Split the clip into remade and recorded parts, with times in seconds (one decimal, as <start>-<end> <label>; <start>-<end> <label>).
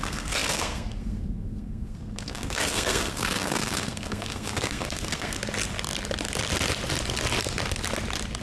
0.0-5.4 remade; 5.4-8.4 recorded